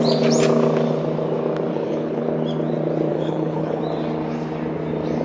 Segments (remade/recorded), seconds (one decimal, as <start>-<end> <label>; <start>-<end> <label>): 0.0-1.7 recorded; 1.7-2.2 remade; 2.2-3.1 recorded; 3.1-3.8 remade; 3.8-5.2 recorded